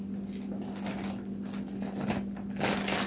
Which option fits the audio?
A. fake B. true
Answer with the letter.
B